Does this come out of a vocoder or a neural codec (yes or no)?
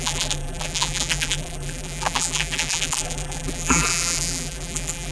yes